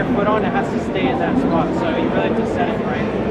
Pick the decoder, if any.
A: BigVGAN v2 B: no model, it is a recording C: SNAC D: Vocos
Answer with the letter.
A